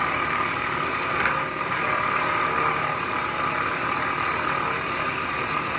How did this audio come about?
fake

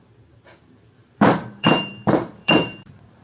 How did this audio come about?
fake